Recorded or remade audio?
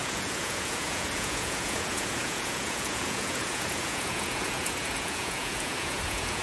remade